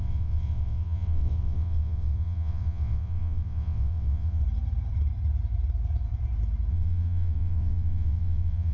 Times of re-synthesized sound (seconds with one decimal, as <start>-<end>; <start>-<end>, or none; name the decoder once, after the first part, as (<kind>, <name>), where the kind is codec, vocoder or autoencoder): 0.0-4.4 (vocoder, WaveNeXt); 6.7-8.7